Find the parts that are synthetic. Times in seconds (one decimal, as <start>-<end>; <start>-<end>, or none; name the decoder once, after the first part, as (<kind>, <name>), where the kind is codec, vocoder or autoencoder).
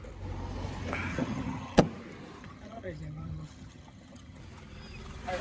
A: 1.1-1.8 (vocoder, HiFi-GAN); 2.4-4.4